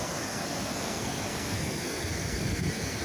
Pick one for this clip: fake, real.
fake